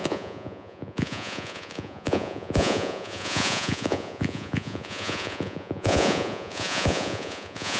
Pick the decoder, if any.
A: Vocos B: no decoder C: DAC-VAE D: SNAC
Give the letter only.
A